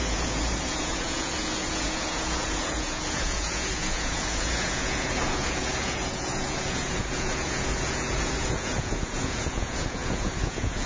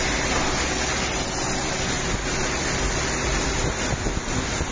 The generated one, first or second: first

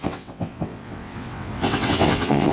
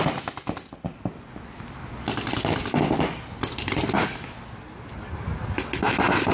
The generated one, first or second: first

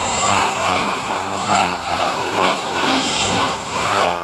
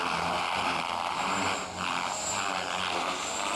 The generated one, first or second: first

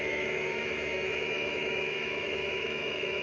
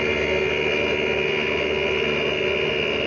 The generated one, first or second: first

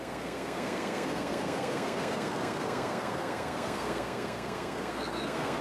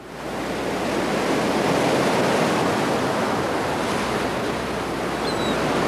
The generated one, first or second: first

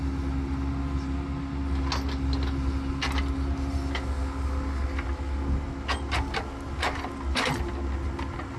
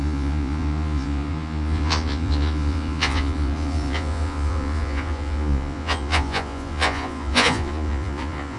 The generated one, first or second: second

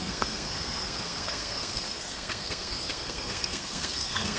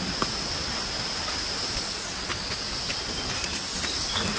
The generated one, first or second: first